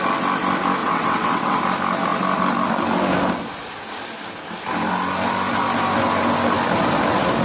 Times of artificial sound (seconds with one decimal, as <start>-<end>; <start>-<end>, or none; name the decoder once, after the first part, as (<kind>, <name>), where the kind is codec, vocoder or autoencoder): 0.8-1.6 (vocoder, WaveNeXt)